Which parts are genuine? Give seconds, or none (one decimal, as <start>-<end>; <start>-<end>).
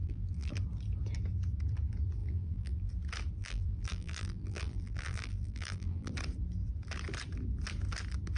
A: 0.5-2.2; 2.9-3.4; 6.1-8.4